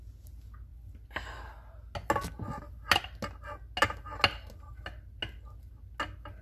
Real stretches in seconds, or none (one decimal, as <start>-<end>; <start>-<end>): 0.0-6.4